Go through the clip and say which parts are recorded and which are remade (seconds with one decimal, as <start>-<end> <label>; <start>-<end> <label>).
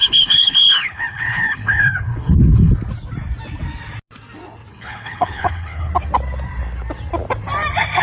0.0-2.7 remade; 2.7-4.7 recorded; 4.7-5.9 remade; 5.9-8.0 recorded